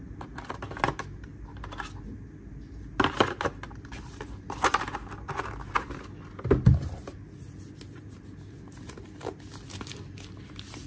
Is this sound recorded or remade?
recorded